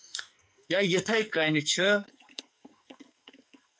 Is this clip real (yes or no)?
no